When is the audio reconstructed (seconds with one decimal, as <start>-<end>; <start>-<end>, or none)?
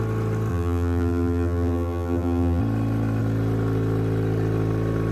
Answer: 0.5-2.6